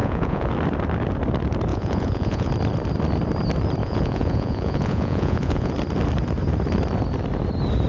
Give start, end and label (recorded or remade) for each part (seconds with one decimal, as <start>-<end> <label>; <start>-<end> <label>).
0.0-0.5 remade; 0.5-1.7 recorded; 1.7-2.5 remade; 2.5-3.8 recorded; 3.8-5.7 remade; 5.7-7.9 recorded